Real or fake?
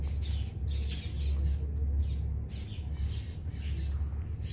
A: real